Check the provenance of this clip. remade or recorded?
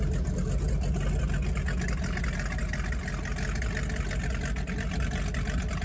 recorded